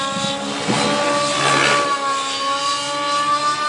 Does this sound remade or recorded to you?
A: recorded